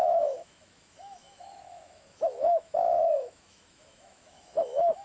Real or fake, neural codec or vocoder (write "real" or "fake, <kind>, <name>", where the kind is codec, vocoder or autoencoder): fake, autoencoder, DAC-VAE